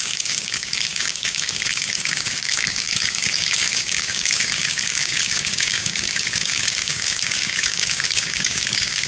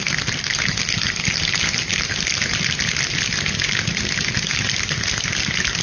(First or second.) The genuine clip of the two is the second